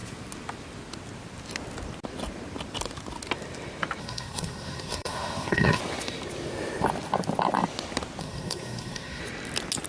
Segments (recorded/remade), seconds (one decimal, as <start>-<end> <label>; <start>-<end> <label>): 0.0-4.0 recorded; 4.0-5.8 remade; 5.8-8.2 recorded; 8.2-9.2 remade; 9.2-9.9 recorded

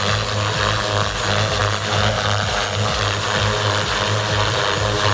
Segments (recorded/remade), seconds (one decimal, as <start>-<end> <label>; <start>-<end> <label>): 0.0-5.1 recorded

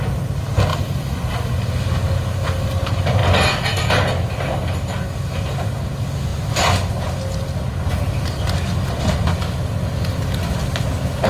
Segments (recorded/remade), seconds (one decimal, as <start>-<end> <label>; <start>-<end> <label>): 0.0-0.7 recorded; 0.7-1.5 remade; 1.5-11.3 recorded

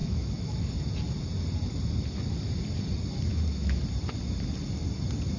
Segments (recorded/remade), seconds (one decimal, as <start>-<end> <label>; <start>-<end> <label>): 0.0-0.7 remade; 0.7-3.3 recorded; 3.3-3.8 remade; 3.8-5.4 recorded

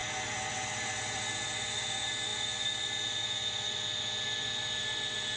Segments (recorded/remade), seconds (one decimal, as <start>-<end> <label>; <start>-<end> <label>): 0.0-5.4 recorded